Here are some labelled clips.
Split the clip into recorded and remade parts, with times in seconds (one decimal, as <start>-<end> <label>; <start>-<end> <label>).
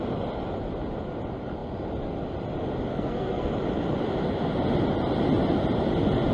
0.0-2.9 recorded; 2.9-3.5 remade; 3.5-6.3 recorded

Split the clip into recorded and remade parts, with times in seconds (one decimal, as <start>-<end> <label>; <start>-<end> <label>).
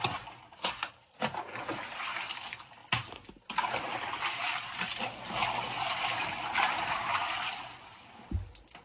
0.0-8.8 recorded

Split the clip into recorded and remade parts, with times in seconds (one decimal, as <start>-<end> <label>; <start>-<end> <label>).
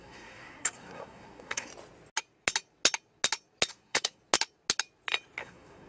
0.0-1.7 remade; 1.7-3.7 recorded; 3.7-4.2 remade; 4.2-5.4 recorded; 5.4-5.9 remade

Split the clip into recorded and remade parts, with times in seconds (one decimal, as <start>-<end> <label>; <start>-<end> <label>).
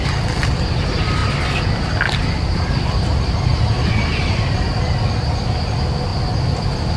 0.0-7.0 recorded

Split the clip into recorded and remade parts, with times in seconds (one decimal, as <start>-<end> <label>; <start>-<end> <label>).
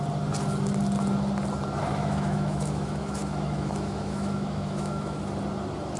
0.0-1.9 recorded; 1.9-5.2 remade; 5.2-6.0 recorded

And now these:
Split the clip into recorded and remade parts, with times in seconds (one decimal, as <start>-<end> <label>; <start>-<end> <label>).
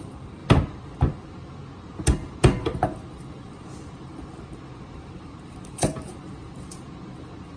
0.0-0.4 remade; 0.4-5.0 recorded; 5.0-6.7 remade; 6.7-7.6 recorded